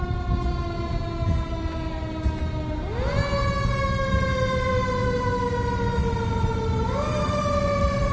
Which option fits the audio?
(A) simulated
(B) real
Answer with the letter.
B